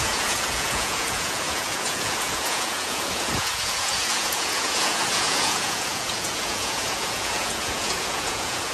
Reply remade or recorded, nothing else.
remade